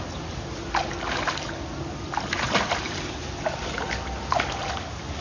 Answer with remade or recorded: recorded